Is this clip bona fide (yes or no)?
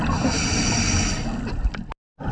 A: yes